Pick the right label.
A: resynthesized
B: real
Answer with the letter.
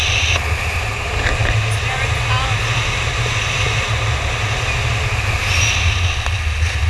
B